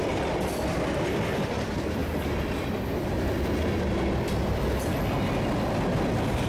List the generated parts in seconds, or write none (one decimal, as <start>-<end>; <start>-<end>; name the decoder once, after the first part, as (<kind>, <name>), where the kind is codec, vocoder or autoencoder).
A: none